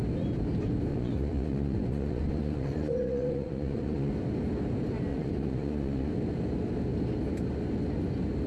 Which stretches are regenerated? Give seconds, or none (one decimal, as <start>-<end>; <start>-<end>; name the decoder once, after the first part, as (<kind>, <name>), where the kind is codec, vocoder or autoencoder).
0.9-4.1 (vocoder, Vocos); 5.1-6.1